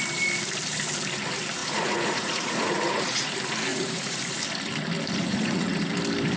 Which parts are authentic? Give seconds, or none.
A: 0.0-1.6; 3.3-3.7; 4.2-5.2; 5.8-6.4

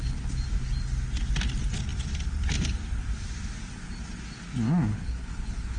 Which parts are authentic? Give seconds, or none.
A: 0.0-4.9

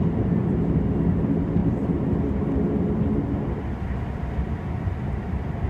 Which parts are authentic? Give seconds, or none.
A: 0.0-1.6; 2.1-5.7